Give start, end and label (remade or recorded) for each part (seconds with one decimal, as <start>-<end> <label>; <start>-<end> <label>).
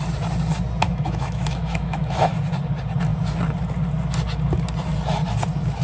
0.0-0.8 recorded; 0.8-2.3 remade; 2.3-5.8 recorded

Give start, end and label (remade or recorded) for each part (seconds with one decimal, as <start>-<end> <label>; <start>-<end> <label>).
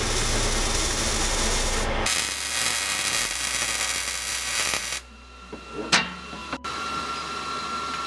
0.0-4.3 recorded; 4.3-4.8 remade; 4.8-6.4 recorded; 6.4-7.1 remade; 7.1-8.1 recorded